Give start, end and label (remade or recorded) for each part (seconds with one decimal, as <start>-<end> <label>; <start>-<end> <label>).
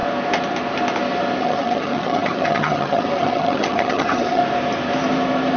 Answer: 0.0-1.4 recorded; 1.4-4.4 remade; 4.4-5.6 recorded